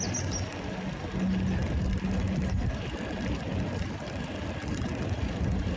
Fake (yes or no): no